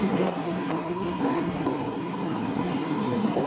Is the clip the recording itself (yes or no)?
no